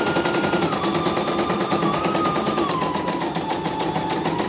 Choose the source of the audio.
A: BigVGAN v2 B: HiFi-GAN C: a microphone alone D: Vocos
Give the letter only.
C